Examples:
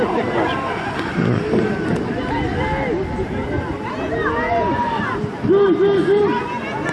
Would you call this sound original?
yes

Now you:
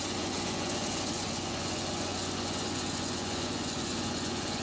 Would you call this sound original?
no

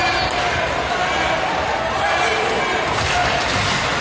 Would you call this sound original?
yes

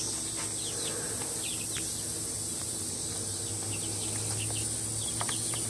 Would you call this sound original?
yes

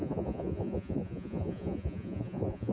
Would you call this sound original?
no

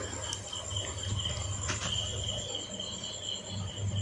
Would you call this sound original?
yes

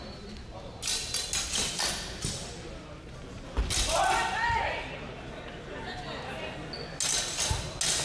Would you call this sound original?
yes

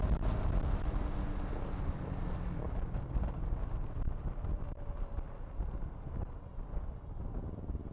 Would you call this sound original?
yes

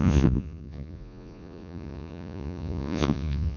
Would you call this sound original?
no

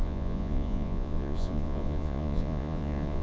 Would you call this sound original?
no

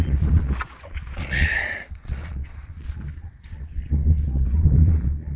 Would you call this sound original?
no